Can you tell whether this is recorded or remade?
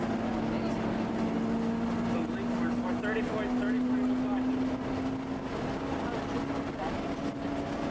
recorded